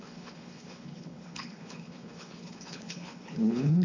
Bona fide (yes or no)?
no